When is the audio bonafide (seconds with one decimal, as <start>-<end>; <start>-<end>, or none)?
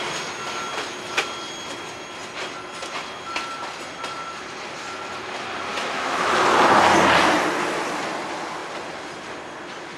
0.0-5.7; 6.3-10.0